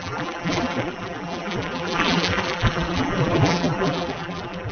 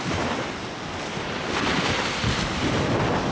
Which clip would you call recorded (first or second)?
second